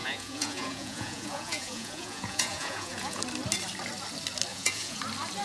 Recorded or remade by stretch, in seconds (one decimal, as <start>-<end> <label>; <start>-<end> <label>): 0.0-3.2 remade; 3.2-4.5 recorded; 4.5-5.0 remade; 5.0-5.4 recorded